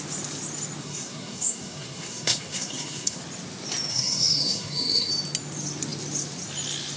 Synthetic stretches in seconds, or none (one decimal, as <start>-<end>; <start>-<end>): 0.8-3.2; 3.9-5.1